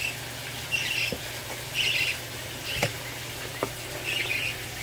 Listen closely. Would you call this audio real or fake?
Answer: real